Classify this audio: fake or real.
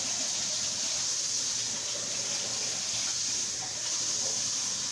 real